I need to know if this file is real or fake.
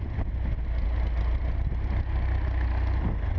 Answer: real